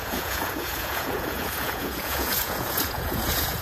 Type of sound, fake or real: fake